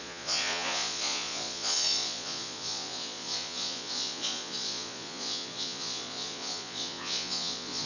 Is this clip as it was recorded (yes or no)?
no